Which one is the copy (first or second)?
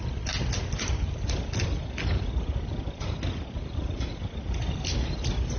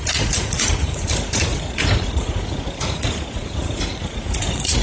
second